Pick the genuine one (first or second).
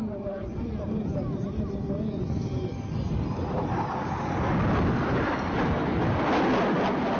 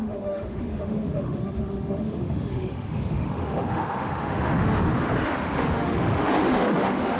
first